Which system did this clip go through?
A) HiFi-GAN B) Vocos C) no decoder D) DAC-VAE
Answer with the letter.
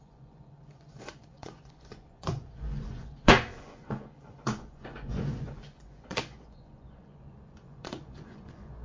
B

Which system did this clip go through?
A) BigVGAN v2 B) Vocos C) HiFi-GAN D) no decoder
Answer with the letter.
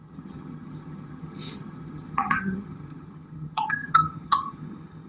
C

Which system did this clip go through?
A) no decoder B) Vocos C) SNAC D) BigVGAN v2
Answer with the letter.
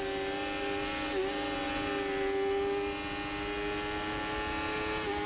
A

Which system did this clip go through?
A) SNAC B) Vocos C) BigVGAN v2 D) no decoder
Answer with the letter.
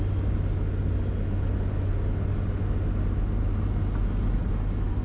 D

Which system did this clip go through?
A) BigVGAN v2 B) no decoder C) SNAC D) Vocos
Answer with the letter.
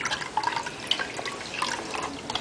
B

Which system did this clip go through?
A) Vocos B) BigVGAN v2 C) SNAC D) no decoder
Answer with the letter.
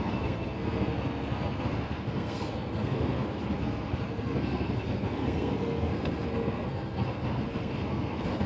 C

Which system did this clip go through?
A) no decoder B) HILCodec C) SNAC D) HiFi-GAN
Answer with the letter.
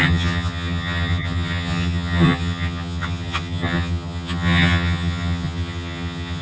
D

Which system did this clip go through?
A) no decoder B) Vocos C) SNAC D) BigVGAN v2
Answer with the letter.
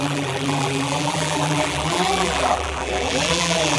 D